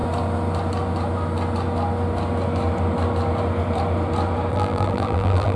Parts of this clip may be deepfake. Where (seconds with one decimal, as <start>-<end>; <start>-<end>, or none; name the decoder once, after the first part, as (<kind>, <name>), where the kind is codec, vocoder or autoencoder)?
4.5-5.6 (vocoder, BigVGAN v2)